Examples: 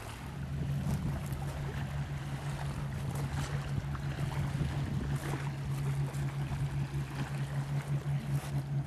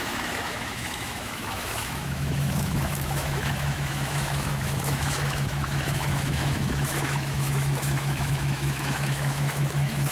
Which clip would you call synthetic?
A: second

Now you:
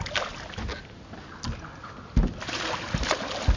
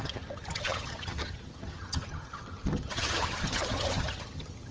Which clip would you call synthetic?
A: second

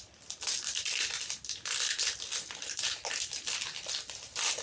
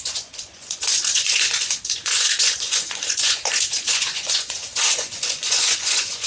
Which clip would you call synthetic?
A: second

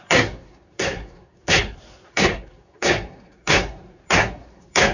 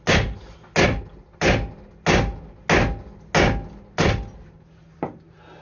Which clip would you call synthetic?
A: first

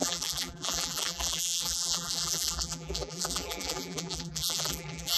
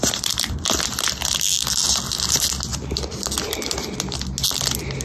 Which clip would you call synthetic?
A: first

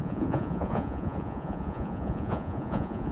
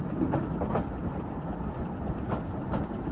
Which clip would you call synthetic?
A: first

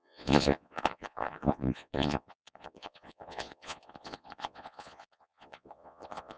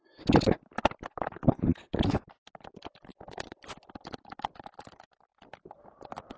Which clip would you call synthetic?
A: first